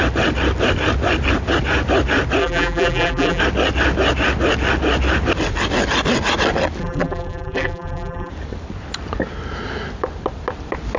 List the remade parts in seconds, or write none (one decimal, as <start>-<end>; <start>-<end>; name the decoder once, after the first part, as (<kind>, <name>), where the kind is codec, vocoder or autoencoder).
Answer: 2.4-3.4 (vocoder, BigVGAN v2); 6.8-8.3